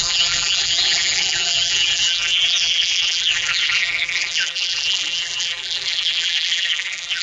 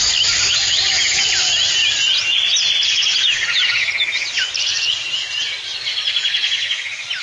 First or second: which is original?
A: second